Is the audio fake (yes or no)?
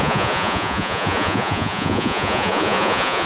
yes